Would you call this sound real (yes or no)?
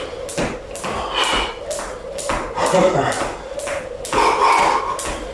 yes